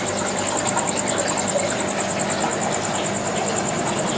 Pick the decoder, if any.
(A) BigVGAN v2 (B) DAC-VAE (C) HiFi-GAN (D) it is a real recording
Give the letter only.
D